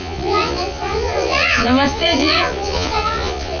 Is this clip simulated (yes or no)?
yes